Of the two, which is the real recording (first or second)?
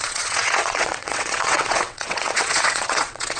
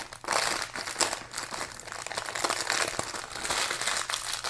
second